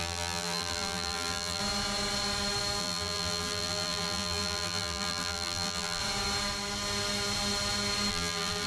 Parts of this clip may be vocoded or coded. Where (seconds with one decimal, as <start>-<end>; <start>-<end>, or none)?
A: 0.0-1.6; 2.8-6.0; 8.1-8.7